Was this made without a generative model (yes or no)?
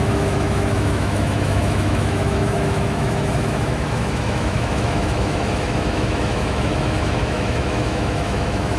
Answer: no